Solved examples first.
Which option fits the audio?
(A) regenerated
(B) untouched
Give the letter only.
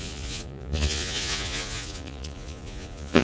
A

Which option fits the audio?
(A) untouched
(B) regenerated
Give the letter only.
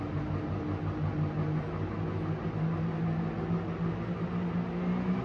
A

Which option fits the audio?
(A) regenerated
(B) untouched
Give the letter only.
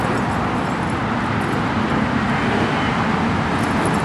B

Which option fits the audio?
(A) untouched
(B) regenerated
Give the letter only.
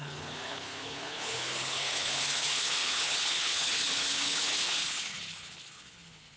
B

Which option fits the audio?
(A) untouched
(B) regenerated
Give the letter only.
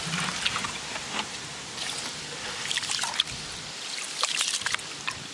A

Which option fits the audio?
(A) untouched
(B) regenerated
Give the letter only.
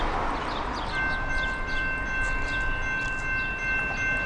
A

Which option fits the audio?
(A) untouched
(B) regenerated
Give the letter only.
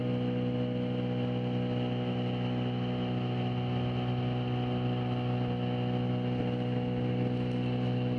A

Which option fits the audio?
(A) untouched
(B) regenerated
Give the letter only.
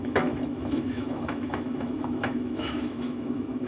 B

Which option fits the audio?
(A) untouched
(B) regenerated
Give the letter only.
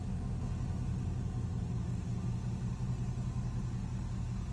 A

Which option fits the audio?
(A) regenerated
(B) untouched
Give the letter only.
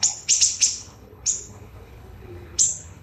A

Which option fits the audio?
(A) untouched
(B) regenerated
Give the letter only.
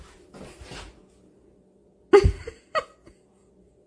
A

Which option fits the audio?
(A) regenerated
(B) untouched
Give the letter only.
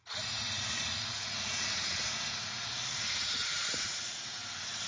A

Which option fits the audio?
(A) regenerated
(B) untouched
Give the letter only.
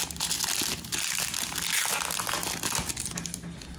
B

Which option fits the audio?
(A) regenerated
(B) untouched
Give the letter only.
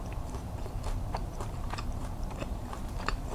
A